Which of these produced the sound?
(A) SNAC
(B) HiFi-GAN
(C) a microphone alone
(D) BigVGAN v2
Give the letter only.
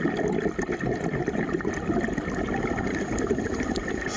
C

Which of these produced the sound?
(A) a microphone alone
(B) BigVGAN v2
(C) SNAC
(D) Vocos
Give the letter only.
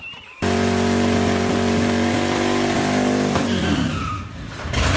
B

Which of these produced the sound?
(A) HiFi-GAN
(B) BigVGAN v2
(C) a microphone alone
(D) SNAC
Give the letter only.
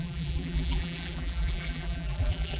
B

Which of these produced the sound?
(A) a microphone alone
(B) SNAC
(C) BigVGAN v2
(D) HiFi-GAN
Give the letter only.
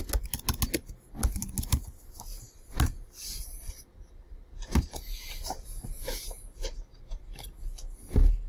A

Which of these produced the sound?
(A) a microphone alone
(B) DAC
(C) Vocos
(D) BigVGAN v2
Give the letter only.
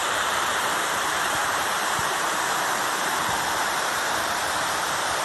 D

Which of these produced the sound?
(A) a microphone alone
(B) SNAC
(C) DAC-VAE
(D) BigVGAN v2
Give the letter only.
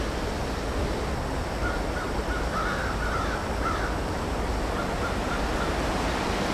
A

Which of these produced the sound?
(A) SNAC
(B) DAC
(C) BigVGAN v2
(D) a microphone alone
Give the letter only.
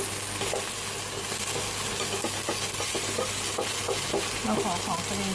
D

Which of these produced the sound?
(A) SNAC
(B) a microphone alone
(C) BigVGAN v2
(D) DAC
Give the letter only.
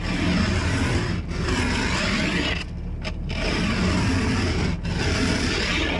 B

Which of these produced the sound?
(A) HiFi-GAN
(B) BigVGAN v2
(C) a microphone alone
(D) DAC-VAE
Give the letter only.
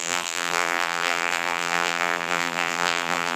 B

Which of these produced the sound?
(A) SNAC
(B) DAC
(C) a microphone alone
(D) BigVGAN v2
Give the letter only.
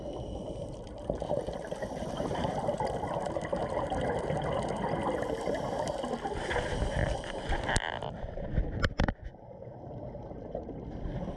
D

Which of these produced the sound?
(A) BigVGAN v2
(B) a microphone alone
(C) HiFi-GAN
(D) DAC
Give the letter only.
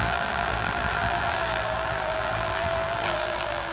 A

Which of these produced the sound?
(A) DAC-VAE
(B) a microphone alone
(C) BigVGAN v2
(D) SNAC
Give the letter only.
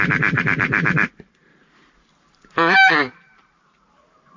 C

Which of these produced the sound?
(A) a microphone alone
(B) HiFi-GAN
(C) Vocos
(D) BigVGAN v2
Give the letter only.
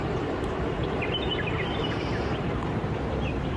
D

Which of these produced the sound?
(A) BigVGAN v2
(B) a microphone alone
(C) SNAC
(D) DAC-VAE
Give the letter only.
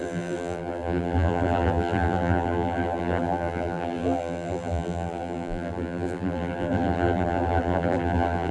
A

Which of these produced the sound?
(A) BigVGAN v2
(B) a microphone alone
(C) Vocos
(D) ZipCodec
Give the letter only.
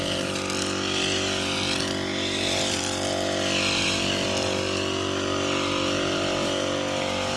B